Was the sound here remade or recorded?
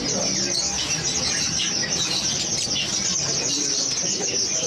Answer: recorded